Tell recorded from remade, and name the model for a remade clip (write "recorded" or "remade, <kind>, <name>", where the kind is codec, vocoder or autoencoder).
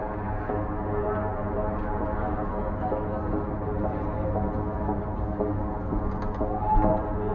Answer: recorded